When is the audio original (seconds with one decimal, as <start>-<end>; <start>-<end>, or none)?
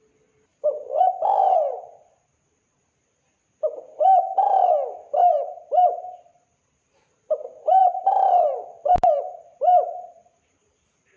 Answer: 0.0-0.5; 2.9-5.3; 7.3-7.8